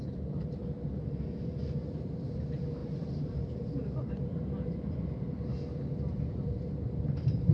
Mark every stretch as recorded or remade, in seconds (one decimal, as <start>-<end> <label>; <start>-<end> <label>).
0.0-0.6 remade; 0.6-1.5 recorded; 1.5-5.5 remade; 5.5-6.1 recorded; 6.1-7.5 remade